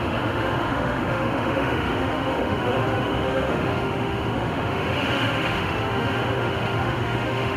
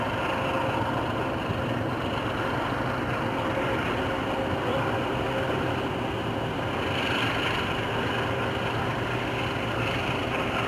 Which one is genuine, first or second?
second